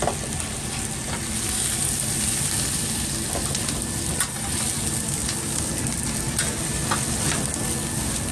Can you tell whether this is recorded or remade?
recorded